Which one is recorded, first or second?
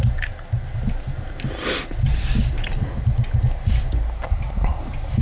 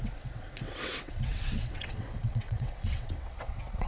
first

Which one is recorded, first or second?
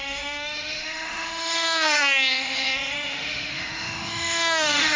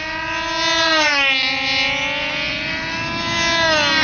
second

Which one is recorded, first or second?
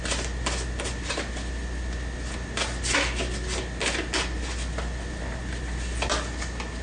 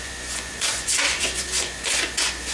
first